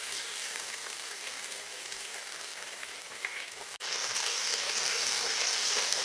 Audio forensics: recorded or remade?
remade